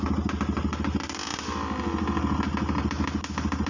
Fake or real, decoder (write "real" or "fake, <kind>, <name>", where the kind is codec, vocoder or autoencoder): real